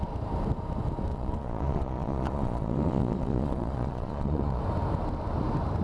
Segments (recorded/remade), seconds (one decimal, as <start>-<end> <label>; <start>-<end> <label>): 0.0-1.1 recorded; 1.1-4.6 remade; 4.6-5.8 recorded